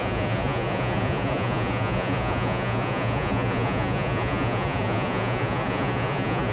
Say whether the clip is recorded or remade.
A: remade